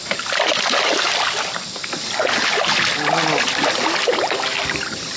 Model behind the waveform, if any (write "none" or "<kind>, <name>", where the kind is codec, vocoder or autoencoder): none